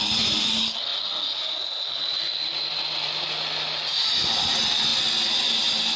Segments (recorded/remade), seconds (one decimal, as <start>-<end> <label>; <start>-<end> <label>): 0.0-6.0 recorded